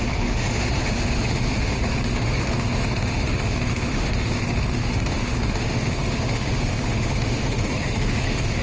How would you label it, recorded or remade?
remade